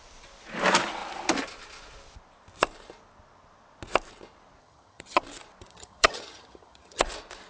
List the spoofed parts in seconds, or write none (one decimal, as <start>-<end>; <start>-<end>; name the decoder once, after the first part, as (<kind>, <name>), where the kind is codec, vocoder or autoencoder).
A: 4.6-5.2 (vocoder, HiFi-GAN); 5.7-7.0